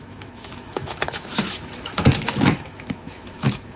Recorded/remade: remade